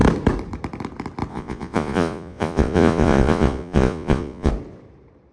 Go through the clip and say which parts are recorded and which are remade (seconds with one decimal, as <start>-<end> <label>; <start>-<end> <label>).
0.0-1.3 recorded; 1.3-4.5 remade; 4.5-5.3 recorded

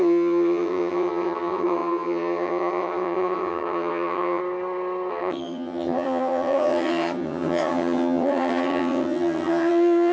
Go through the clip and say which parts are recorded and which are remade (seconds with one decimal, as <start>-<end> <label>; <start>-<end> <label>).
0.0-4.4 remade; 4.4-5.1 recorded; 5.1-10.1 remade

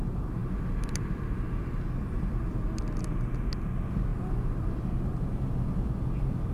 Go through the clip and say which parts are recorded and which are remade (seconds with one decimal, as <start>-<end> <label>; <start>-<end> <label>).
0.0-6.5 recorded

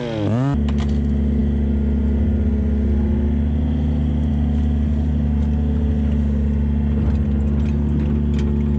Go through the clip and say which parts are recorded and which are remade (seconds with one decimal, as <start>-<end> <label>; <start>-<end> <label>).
0.0-8.8 recorded